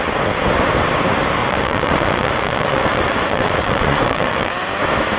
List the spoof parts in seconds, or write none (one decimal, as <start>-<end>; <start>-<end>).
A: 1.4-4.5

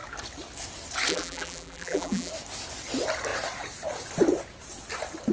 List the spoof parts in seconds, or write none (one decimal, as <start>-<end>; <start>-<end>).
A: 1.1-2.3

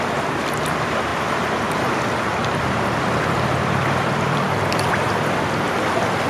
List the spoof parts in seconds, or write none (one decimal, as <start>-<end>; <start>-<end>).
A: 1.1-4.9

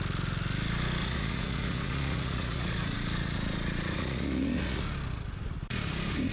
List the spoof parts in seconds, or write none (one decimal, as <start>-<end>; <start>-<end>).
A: 1.0-4.8